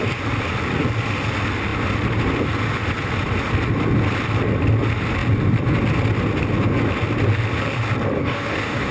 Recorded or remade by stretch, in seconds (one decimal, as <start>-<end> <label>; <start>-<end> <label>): 0.0-8.2 recorded; 8.2-8.9 remade